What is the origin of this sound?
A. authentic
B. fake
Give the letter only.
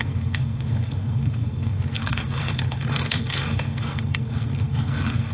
B